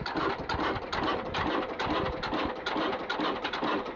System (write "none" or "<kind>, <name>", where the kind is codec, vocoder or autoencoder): none